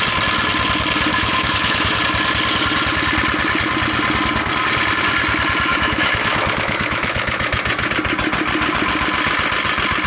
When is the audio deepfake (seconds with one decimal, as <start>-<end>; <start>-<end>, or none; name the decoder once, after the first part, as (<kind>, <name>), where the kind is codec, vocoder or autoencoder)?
1.1-2.0 (autoencoder, DAC-VAE); 5.7-7.9